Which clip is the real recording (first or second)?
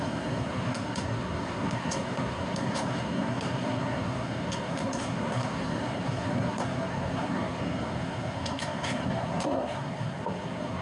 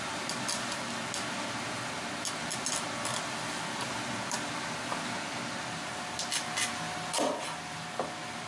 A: second